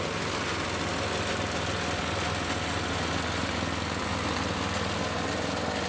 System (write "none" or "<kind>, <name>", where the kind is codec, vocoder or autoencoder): none